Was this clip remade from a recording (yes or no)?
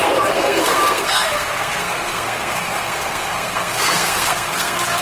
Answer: yes